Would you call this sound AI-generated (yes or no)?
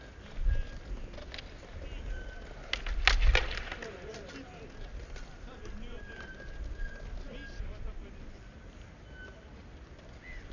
no